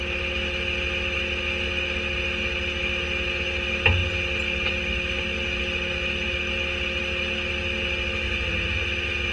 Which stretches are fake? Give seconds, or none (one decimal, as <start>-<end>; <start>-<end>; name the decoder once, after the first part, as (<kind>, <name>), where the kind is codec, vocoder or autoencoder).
none